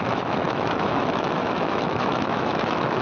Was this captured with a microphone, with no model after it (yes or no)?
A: no